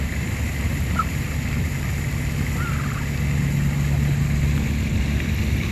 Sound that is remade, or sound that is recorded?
remade